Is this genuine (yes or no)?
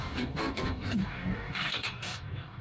no